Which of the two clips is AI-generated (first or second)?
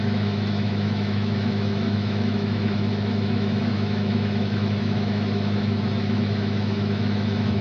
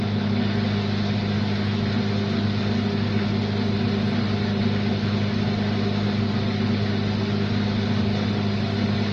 first